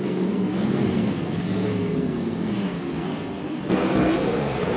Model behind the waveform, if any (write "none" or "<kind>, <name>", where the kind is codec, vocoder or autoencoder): codec, SNAC